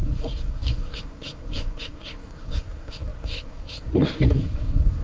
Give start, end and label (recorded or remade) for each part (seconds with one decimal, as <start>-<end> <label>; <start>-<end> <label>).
0.0-5.0 remade